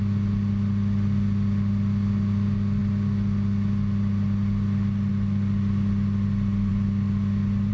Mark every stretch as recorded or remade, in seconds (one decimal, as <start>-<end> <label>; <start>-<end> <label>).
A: 0.0-7.7 recorded